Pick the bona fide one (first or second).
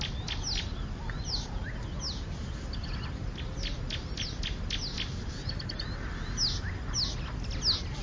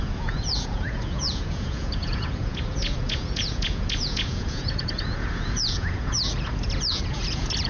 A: first